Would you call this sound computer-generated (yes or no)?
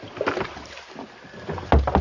no